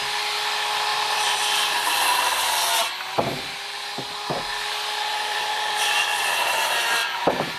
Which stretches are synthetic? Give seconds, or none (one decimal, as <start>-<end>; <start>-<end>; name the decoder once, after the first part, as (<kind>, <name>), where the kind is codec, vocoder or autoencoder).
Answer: 0.9-2.5 (vocoder, BigVGAN v2); 5.1-6.0; 7.0-7.6

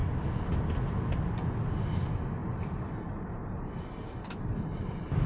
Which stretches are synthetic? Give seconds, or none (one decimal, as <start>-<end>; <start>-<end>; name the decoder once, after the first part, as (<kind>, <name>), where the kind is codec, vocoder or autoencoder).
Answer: 2.4-4.3 (vocoder, BigVGAN v2)